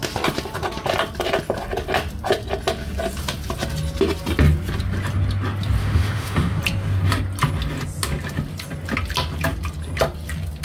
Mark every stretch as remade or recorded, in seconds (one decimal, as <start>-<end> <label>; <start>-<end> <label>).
0.0-5.8 recorded; 5.8-6.6 remade; 6.6-10.6 recorded